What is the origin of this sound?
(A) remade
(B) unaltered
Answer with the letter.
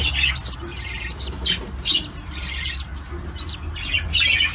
B